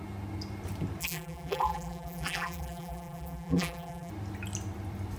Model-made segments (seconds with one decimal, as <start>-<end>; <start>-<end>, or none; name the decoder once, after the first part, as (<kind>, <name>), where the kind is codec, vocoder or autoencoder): 1.0-4.1 (vocoder, BigVGAN v2)